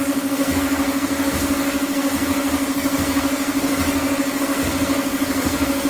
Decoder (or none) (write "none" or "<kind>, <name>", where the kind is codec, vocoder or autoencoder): codec, SNAC